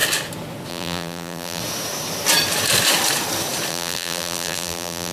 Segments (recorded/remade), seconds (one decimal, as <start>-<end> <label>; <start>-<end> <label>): 0.0-0.7 recorded; 0.7-1.6 remade; 1.6-3.7 recorded; 3.7-5.1 remade